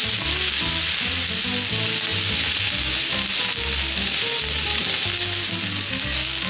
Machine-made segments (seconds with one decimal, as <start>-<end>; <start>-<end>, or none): none